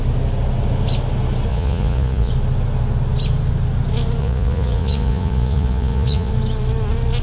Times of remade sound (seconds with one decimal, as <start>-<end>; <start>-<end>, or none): 1.5-2.3; 4.2-6.3